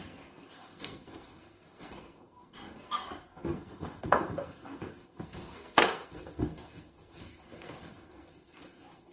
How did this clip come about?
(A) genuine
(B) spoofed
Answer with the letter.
B